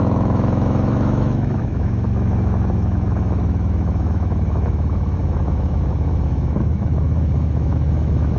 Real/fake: fake